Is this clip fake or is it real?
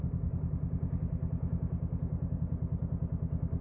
real